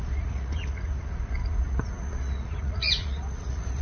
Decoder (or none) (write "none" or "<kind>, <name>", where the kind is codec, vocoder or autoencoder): vocoder, Vocos